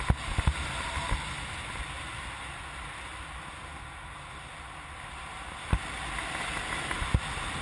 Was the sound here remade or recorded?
recorded